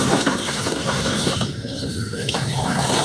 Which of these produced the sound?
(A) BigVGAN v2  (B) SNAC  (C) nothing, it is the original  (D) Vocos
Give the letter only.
B